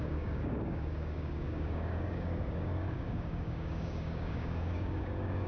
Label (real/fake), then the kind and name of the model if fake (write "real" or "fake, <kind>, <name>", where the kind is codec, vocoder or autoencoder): fake, codec, DAC